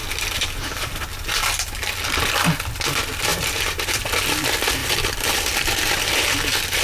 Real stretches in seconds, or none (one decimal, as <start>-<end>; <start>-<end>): 0.0-3.3; 4.1-4.8; 5.5-6.8